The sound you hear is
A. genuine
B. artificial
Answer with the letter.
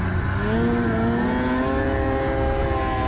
A